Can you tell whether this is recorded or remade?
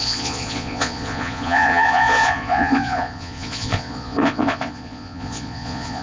remade